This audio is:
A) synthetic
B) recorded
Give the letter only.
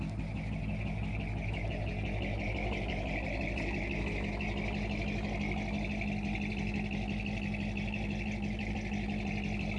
B